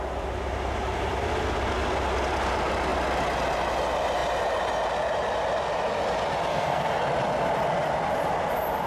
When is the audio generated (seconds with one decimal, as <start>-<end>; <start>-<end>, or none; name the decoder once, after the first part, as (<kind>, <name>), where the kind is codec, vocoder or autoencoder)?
6.5-7.0 (codec, SNAC)